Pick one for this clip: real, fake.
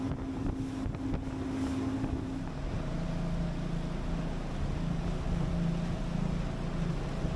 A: real